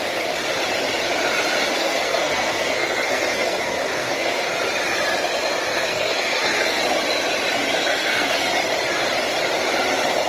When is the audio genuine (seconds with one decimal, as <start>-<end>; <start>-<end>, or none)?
0.0-1.7; 4.5-5.7; 6.8-7.9; 8.5-10.3